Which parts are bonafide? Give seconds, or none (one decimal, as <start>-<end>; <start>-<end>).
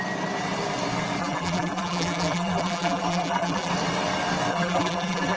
0.0-1.2; 3.7-4.5